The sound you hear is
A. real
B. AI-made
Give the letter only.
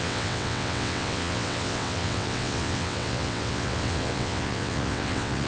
B